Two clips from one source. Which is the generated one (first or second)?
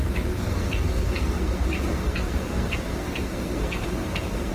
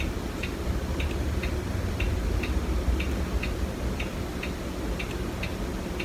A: first